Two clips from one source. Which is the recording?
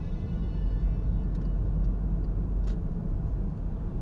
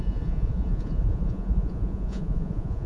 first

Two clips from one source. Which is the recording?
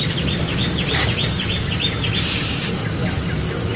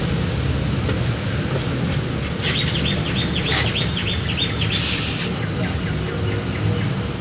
second